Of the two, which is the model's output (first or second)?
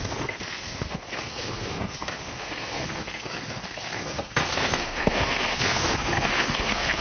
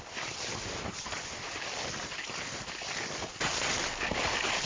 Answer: first